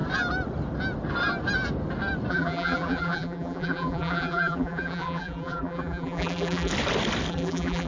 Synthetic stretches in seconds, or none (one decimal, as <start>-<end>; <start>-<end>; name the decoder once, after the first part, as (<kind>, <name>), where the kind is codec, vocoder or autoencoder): 2.3-6.7 (vocoder, BigVGAN v2); 7.3-7.9